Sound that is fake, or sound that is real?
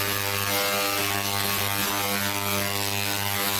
real